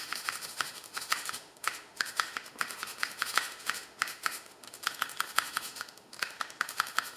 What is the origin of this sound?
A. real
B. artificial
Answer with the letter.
B